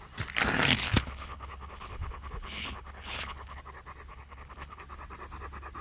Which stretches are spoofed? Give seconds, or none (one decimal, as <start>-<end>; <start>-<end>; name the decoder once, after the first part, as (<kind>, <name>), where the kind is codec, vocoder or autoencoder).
0.8-3.6 (codec, HILCodec); 4.1-4.8